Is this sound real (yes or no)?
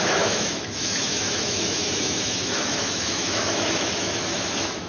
no